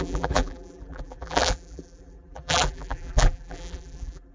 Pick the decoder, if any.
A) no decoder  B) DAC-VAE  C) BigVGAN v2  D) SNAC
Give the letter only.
C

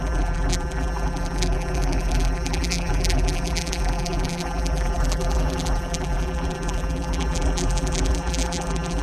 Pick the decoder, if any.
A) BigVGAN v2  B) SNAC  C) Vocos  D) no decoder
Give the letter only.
A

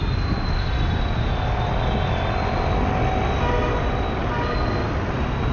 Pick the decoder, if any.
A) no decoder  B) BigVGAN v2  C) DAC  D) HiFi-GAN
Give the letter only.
A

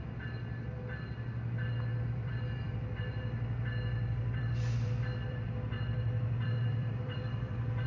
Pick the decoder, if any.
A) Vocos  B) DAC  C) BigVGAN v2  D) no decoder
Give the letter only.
C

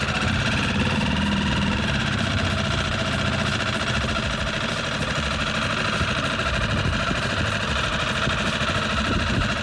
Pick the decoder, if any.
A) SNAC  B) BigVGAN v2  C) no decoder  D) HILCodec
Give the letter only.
B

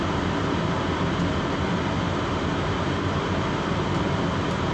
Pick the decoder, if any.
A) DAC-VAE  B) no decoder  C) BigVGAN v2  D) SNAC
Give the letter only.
C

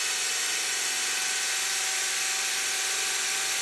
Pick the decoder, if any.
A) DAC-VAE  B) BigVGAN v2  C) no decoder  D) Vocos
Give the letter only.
B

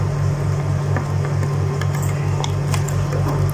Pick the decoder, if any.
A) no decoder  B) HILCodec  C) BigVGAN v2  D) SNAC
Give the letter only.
A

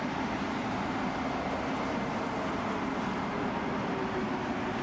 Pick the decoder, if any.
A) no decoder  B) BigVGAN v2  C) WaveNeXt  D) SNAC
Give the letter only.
A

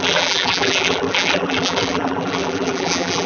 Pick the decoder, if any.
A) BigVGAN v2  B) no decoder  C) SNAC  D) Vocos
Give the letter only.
A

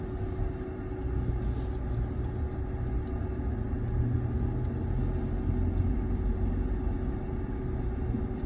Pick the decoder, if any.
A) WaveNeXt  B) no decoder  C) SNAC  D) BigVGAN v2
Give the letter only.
B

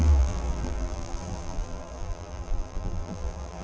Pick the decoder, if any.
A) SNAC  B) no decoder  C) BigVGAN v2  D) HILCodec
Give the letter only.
C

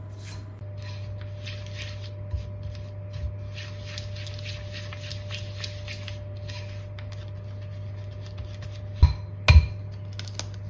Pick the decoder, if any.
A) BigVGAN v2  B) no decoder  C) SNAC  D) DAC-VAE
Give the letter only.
B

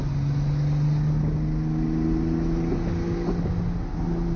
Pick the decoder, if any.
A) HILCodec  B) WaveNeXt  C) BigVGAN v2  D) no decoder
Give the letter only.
D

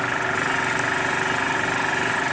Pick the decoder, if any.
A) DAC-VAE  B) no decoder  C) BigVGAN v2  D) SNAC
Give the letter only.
B